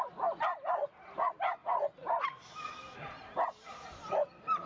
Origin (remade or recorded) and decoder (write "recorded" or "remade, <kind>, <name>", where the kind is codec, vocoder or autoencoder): recorded